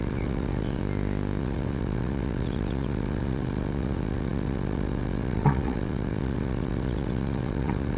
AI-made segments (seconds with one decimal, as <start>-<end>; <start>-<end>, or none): 0.0-0.8; 1.4-8.0